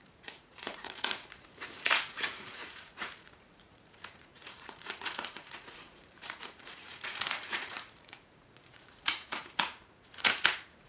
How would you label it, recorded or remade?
remade